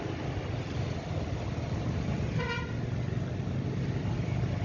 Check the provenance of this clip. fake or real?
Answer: real